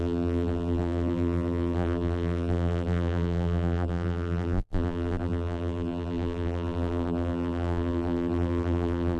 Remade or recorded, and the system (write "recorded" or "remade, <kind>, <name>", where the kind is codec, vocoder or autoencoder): remade, vocoder, BigVGAN v2